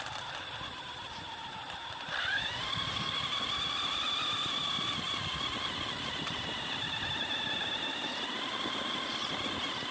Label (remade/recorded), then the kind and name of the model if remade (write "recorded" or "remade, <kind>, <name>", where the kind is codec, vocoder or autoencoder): recorded